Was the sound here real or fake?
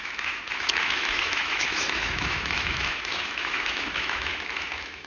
fake